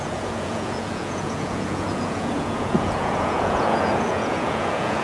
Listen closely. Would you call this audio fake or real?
fake